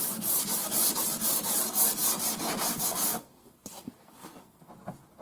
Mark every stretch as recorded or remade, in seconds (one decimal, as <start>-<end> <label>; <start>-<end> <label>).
0.0-2.7 recorded; 2.7-4.7 remade; 4.7-5.2 recorded